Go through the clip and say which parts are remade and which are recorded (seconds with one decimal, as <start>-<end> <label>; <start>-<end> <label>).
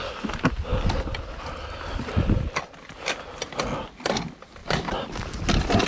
0.0-4.6 recorded; 4.6-5.2 remade; 5.2-5.9 recorded